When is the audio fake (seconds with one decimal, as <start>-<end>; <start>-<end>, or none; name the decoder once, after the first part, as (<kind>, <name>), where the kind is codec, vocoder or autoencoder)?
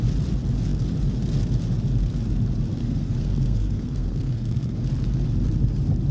2.8-4.8 (codec, SNAC)